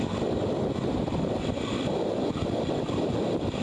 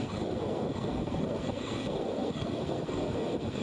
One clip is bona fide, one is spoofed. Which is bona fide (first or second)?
first